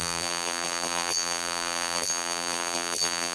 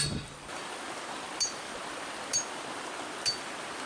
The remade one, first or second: first